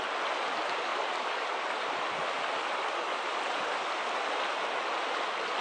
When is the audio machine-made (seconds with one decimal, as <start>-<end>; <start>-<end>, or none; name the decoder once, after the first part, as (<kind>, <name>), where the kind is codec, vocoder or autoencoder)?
none